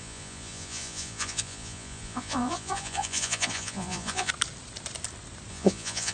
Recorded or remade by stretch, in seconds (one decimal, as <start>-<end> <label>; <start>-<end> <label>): 0.0-4.3 remade; 4.3-5.5 recorded; 5.5-6.1 remade